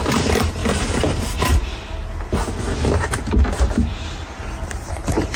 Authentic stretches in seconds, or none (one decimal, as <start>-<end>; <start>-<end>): 1.7-4.9